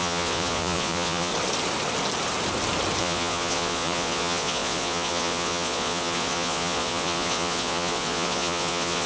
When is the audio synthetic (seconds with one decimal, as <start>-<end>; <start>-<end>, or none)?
0.0-1.3; 3.0-9.1